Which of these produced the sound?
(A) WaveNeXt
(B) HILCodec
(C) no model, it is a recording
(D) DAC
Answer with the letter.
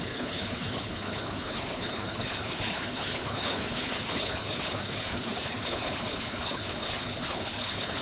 B